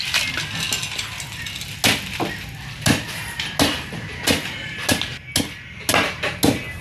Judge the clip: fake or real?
real